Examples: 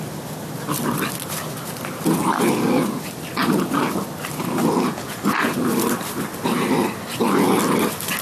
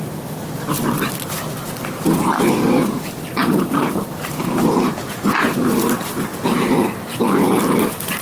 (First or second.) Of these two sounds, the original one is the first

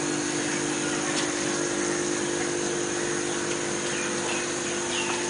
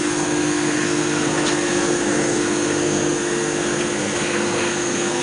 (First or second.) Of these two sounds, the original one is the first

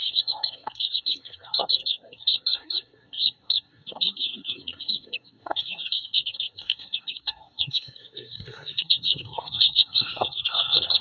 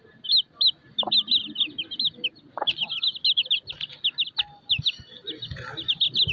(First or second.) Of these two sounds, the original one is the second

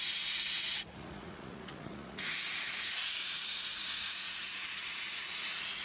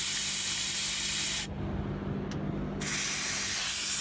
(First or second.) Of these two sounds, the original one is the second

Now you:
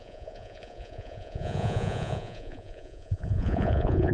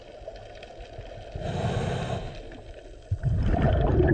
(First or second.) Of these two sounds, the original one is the second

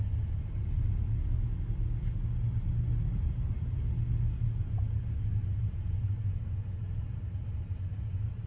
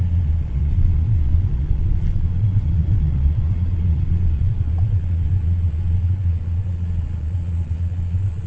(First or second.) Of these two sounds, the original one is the first